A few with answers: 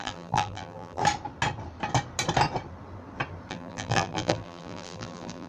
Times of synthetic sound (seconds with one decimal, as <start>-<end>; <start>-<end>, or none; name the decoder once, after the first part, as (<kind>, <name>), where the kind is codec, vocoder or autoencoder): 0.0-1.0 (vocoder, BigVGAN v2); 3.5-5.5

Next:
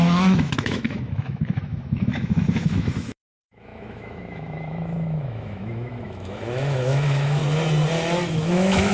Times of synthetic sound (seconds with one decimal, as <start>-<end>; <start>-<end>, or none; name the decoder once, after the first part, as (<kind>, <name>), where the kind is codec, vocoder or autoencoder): 0.0-7.4 (autoencoder, DAC-VAE); 8.3-8.9

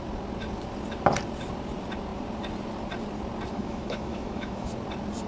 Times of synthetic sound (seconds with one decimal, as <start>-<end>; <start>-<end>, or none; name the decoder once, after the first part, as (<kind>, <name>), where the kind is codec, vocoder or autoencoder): 3.5-4.7 (autoencoder, DAC-VAE)

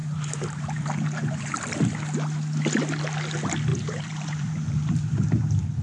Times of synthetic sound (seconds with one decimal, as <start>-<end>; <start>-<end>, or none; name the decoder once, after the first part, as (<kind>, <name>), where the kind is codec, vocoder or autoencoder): 0.0-1.8 (vocoder, BigVGAN v2); 3.7-5.1

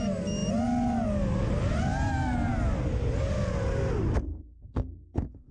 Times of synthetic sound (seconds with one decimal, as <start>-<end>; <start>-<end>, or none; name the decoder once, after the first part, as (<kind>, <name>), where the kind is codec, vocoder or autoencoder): 4.3-5.5 (codec, SNAC)

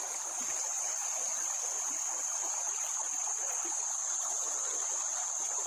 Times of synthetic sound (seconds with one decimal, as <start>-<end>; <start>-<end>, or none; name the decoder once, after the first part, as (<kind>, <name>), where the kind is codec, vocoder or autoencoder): none

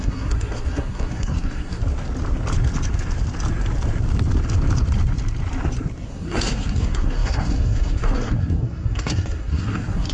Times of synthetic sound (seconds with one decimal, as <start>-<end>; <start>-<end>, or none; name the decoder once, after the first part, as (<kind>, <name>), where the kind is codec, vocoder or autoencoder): 0.0-1.8 (codec, SNAC); 6.1-10.1